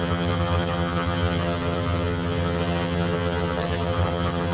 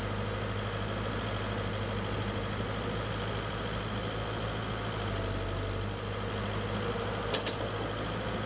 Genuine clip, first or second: second